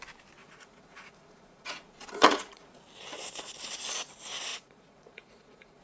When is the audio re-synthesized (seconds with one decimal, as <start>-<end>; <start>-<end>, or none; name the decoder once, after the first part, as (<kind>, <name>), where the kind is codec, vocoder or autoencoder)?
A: 0.4-2.8 (vocoder, Vocos); 4.5-5.8